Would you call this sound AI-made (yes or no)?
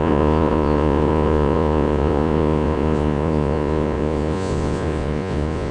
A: yes